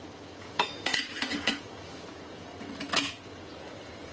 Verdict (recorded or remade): remade